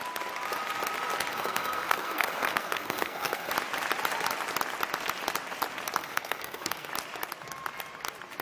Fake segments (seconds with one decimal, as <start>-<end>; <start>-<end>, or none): 1.3-3.5; 6.0-6.9

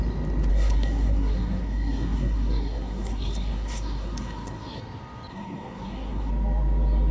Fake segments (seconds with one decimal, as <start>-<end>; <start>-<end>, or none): 0.5-4.8; 5.3-6.3

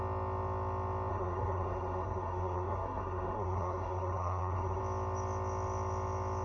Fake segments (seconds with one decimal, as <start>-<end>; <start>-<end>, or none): 1.1-4.8